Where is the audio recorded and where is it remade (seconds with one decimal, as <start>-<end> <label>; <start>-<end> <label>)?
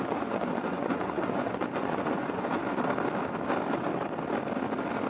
0.0-2.6 remade; 2.6-5.1 recorded